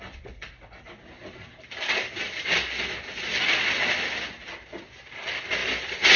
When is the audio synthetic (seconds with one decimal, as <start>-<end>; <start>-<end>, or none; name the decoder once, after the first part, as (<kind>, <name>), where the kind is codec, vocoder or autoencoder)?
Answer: none